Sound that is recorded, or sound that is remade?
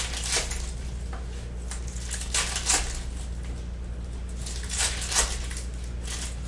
recorded